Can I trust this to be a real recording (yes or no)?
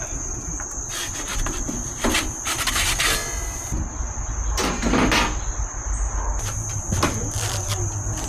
yes